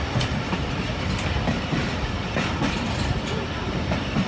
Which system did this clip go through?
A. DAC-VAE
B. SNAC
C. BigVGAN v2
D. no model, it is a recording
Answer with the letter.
C